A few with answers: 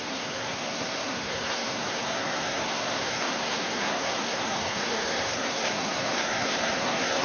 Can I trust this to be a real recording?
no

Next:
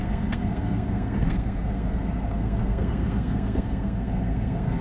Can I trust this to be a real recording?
no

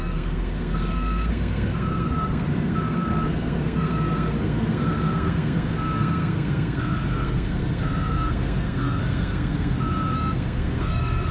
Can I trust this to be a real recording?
no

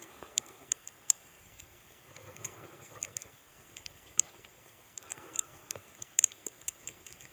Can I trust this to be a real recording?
no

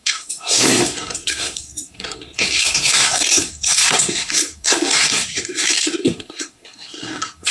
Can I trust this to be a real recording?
no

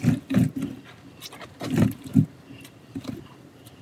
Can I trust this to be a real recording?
yes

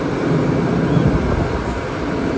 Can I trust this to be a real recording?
yes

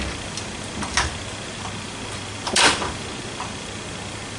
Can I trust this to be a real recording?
yes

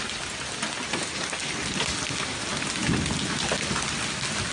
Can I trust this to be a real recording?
yes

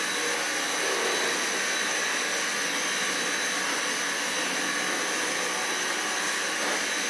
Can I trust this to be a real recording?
yes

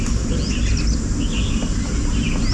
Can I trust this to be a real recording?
yes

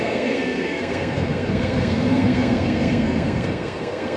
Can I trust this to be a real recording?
no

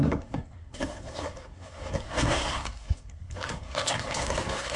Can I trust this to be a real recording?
no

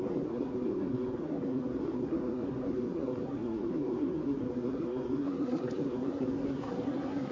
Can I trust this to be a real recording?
no